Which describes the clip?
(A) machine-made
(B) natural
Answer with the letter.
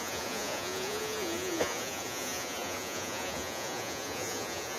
A